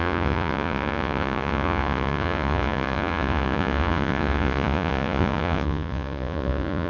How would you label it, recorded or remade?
remade